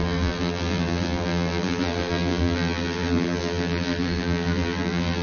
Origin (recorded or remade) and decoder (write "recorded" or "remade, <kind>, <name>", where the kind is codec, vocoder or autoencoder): remade, vocoder, BigVGAN v2